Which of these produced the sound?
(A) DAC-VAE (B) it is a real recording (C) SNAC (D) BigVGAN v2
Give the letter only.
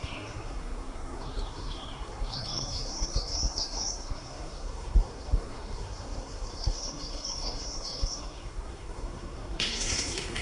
C